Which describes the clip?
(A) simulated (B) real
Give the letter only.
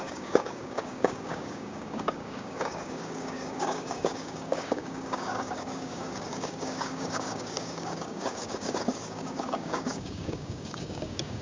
A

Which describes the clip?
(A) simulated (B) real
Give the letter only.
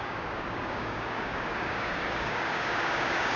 A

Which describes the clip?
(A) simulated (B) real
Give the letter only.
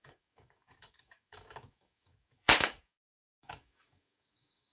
A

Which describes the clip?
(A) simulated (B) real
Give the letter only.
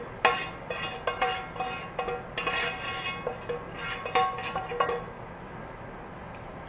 B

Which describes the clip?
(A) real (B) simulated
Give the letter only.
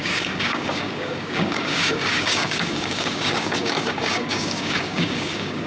B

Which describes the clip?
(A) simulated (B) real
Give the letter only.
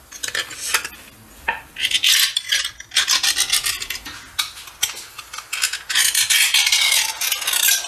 B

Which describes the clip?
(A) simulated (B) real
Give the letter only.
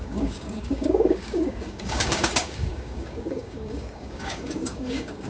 A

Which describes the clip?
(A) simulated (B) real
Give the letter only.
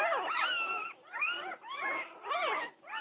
B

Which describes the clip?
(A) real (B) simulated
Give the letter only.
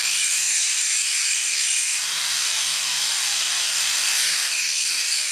B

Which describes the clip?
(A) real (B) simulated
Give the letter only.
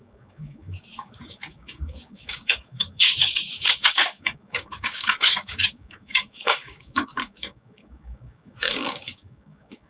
B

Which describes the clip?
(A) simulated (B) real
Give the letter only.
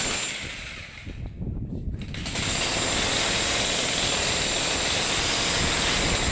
B